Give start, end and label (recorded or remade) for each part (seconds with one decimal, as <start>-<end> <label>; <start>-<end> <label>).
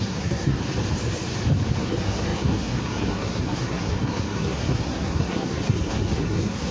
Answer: 0.0-0.6 remade; 0.6-1.8 recorded; 1.8-6.7 remade